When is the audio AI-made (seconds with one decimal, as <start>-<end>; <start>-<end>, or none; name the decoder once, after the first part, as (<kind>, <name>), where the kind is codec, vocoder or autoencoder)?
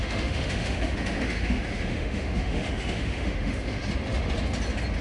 0.0-3.8 (autoencoder, DAC-VAE)